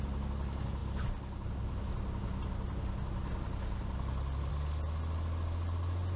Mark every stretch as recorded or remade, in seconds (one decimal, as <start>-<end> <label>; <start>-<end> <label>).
0.0-6.2 recorded